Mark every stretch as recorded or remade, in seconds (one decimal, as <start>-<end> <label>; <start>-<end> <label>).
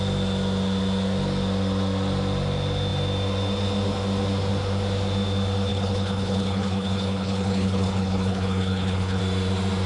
0.0-5.7 recorded; 5.7-9.2 remade; 9.2-9.9 recorded